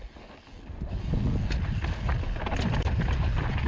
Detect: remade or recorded recorded